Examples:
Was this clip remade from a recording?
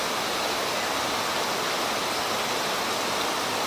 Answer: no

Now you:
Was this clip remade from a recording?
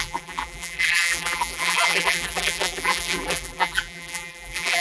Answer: yes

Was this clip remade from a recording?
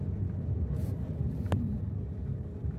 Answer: yes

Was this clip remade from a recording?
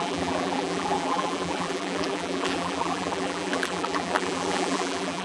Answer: yes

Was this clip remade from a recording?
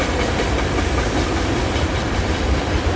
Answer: yes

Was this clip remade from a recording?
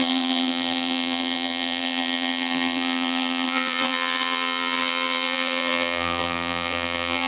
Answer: yes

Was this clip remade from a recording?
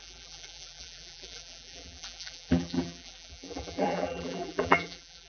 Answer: yes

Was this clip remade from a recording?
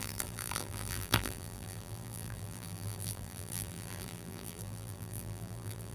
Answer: yes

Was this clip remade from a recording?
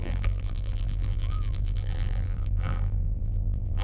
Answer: yes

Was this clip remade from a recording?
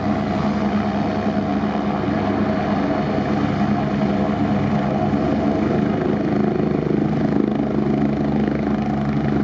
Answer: no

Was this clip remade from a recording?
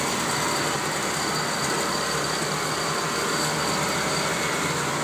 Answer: no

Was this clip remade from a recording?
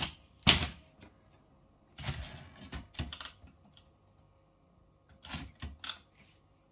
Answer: no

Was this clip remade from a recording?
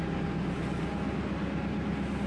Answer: no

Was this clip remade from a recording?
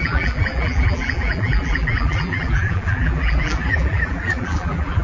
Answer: yes